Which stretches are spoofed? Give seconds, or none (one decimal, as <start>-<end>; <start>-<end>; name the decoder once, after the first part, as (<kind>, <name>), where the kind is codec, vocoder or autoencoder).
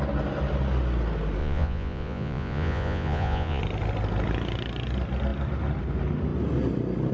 1.4-3.6 (vocoder, Vocos)